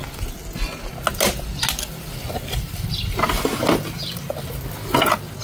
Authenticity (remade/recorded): recorded